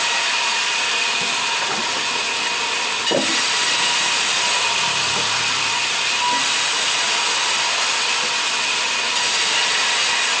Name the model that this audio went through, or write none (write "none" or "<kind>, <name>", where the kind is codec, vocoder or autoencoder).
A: none